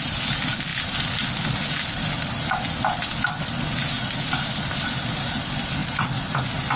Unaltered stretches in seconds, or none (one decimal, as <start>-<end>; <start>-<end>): 0.0-6.8